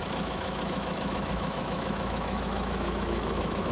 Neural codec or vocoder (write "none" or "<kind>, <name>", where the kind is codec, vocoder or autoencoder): autoencoder, DAC-VAE